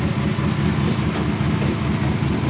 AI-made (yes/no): no